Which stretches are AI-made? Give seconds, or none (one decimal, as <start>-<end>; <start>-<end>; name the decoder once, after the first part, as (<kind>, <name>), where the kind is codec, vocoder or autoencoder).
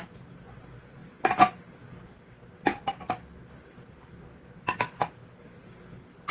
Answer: none